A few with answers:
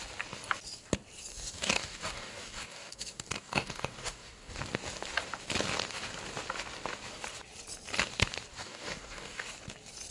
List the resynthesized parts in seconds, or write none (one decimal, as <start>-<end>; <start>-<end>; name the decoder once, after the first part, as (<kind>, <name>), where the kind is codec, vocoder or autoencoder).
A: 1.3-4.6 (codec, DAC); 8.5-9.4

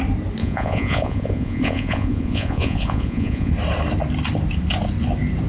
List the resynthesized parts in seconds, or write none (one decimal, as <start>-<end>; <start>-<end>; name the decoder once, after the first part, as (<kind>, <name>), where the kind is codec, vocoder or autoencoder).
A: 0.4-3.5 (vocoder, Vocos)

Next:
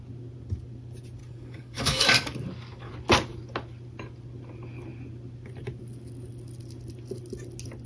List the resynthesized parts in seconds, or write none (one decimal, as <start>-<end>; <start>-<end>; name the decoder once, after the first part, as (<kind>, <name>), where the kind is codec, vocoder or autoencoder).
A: 1.2-2.9 (codec, DAC)

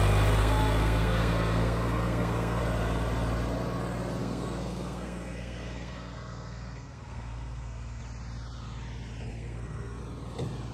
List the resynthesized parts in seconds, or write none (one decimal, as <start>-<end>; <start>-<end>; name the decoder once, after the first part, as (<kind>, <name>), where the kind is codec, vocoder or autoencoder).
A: 0.4-2.6 (codec, SNAC); 4.2-8.0; 9.3-10.0